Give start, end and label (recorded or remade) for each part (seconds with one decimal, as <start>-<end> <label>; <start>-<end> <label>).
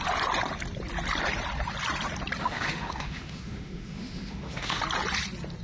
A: 0.0-2.4 recorded; 2.4-4.8 remade; 4.8-5.6 recorded